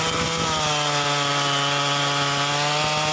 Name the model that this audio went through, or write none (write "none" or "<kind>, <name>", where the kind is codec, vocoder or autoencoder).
none